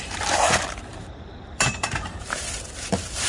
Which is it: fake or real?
fake